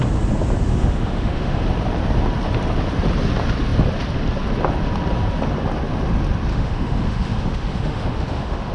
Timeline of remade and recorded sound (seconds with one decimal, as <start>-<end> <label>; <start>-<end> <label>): 0.0-0.7 recorded; 0.7-1.6 remade; 1.6-6.5 recorded; 6.5-8.7 remade